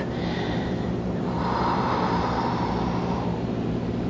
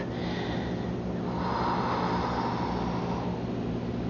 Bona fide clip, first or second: second